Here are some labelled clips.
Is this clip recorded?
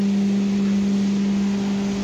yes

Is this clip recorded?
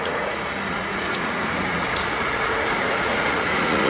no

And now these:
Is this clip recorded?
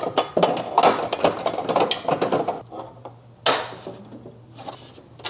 yes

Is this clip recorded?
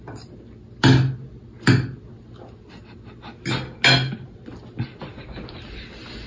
yes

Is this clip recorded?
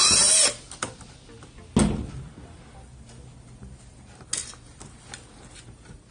yes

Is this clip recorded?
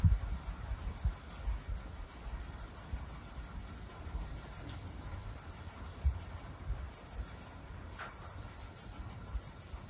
yes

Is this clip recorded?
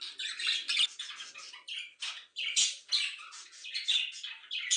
yes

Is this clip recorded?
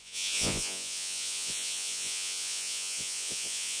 no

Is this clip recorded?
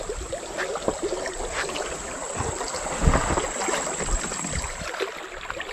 yes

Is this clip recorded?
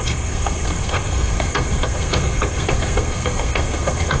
no